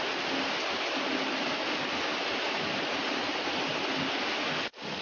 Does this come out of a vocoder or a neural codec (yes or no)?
no